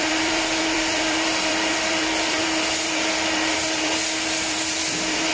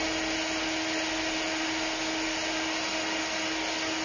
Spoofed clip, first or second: first